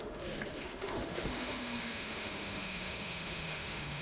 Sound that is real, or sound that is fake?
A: fake